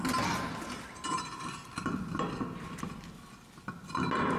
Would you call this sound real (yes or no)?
yes